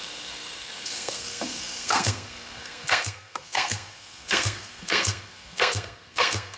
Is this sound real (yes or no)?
no